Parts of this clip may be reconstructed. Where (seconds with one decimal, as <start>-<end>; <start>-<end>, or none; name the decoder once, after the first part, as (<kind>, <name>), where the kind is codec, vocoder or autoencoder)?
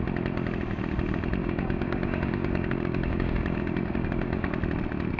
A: 1.4-4.5 (codec, DAC)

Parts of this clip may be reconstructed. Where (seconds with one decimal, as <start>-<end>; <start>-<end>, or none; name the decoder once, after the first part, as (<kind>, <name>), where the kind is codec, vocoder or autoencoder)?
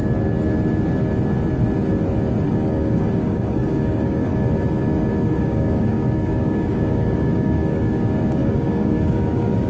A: 2.5-4.3 (codec, DAC); 5.4-9.7